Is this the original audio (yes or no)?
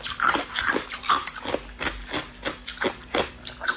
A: yes